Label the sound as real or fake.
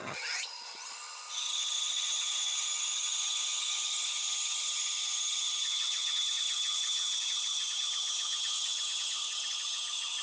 fake